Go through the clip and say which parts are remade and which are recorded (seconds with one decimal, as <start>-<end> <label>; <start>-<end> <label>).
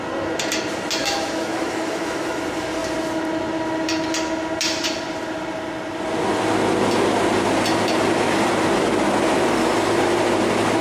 0.0-1.0 recorded; 1.0-2.4 remade; 2.4-10.8 recorded